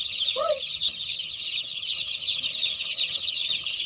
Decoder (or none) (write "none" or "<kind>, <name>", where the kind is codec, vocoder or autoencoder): vocoder, HiFi-GAN